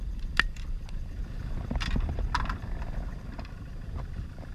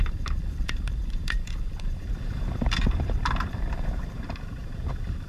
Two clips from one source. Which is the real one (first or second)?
first